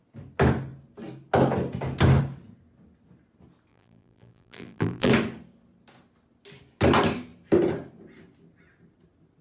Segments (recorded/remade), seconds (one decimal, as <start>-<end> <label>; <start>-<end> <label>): 0.0-3.7 recorded; 3.7-5.1 remade; 5.1-9.4 recorded